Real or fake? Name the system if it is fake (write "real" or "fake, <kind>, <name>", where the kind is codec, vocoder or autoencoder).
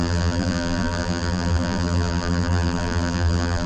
fake, vocoder, BigVGAN v2